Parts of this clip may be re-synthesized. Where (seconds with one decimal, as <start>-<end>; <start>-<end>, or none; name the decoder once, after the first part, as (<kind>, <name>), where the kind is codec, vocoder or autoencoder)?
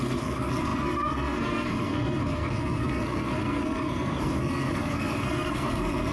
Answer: 0.0-6.1 (codec, SNAC)